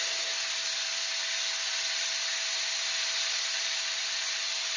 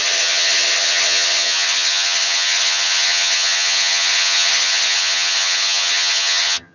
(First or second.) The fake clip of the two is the second